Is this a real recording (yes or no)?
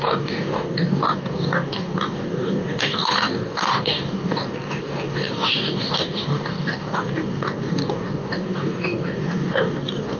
no